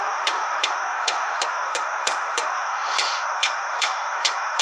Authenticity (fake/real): fake